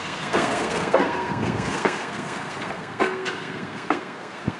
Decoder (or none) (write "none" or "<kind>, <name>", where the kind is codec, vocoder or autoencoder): codec, SNAC